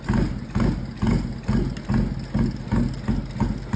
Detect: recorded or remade recorded